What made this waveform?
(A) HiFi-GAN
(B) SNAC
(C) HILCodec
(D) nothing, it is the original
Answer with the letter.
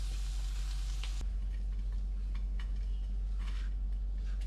D